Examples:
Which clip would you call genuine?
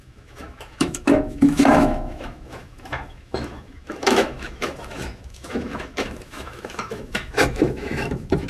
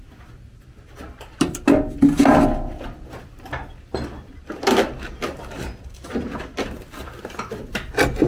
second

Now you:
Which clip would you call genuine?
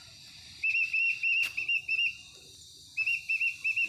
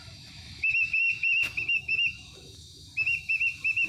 first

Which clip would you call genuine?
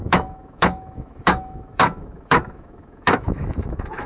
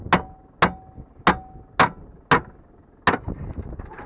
second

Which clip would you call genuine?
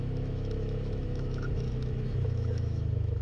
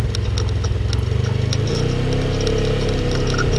second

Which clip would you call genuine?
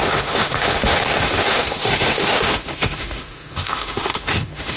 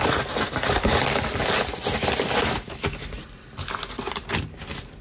second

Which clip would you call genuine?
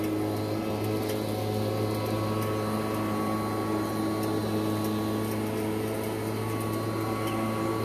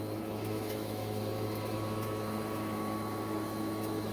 first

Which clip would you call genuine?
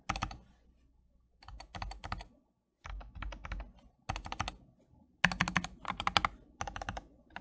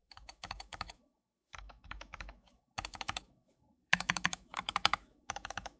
first